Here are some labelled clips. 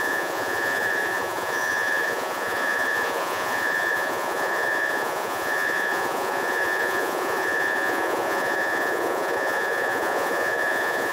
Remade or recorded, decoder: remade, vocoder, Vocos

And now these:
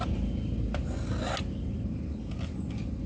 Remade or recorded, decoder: recorded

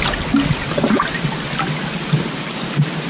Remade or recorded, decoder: recorded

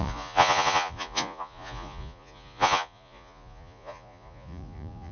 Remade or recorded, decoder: remade, vocoder, Vocos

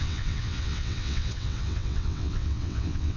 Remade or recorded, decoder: remade, vocoder, WaveNeXt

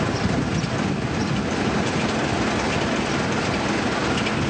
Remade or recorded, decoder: recorded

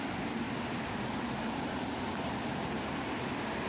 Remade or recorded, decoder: recorded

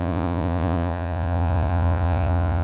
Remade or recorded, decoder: remade, vocoder, Vocos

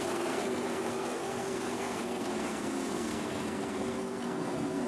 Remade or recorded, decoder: remade, codec, SNAC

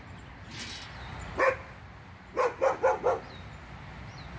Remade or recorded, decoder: recorded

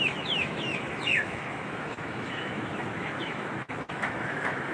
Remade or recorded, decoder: remade, autoencoder, DAC-VAE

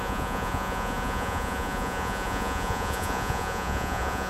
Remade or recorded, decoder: remade, vocoder, Vocos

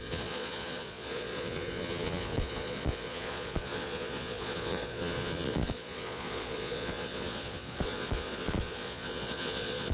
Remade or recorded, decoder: remade, vocoder, Vocos